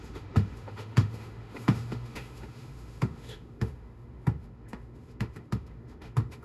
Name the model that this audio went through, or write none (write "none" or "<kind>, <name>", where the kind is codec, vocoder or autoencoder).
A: autoencoder, DAC-VAE